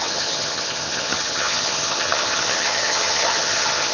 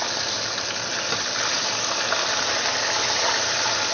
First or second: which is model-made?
first